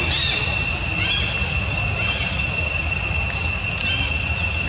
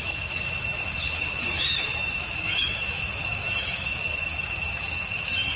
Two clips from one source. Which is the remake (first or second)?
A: second